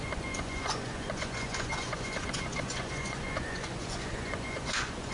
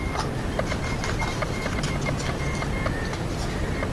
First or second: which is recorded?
second